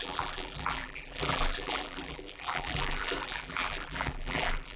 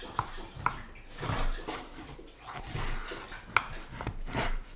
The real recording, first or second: second